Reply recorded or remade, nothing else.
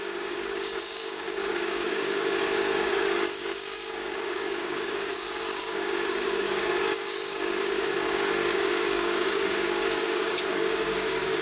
remade